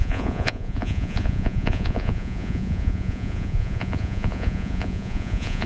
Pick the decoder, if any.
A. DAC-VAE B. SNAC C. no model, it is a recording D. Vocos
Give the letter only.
D